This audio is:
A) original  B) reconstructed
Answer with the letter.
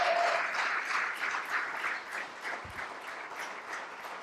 A